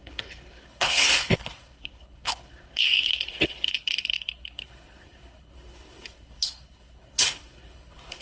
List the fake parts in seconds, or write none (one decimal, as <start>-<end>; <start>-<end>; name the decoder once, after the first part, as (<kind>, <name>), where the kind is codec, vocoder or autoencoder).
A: 0.0-8.2 (codec, HILCodec)